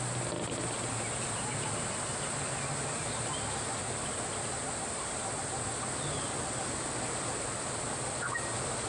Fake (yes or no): no